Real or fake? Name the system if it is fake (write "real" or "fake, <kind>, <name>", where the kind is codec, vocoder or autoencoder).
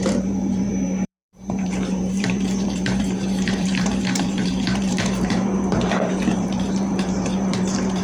fake, vocoder, BigVGAN v2